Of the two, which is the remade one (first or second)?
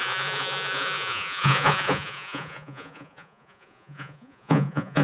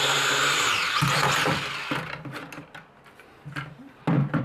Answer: first